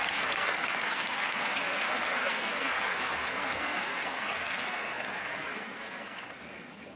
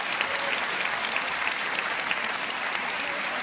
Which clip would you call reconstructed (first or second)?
first